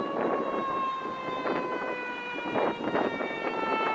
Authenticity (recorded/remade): remade